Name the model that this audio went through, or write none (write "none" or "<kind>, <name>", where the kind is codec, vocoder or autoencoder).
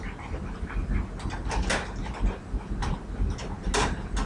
none